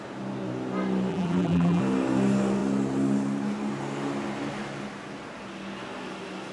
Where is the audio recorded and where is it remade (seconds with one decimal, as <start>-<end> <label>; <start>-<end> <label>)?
0.0-1.1 recorded; 1.1-1.8 remade; 1.8-6.5 recorded